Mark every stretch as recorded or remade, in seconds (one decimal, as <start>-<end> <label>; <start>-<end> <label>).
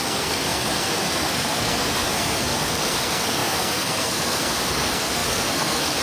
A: 0.0-6.0 remade